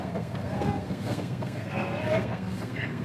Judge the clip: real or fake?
fake